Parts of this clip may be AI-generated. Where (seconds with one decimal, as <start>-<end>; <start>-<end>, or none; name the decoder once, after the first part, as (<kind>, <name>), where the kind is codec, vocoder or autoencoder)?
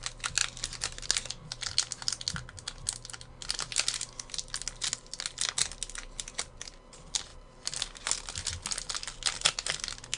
none